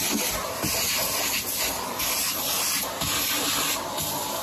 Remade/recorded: recorded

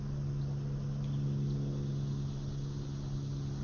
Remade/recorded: recorded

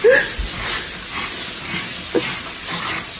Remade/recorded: recorded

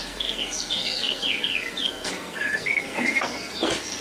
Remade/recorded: remade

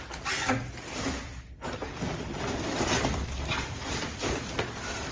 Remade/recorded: remade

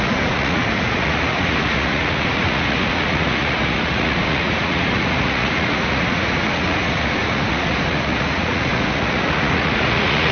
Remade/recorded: remade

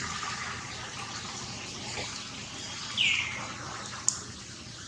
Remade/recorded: recorded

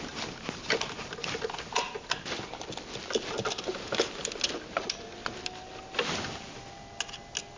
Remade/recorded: recorded